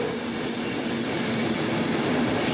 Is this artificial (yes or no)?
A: no